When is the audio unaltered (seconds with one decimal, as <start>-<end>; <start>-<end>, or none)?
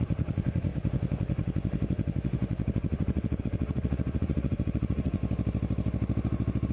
5.2-6.7